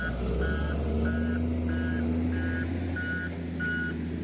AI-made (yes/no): no